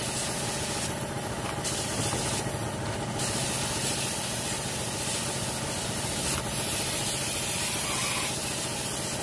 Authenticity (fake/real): real